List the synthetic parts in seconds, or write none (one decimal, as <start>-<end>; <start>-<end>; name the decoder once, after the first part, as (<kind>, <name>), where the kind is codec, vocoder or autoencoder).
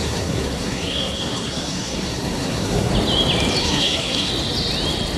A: 0.0-2.9 (codec, SNAC); 3.6-4.3